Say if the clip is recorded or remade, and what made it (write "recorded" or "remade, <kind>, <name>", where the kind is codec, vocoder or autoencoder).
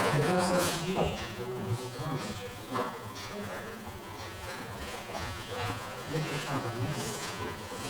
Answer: remade, vocoder, Vocos